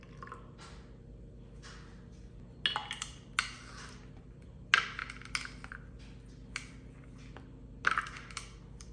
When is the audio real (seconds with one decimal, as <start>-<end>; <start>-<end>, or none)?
0.0-8.9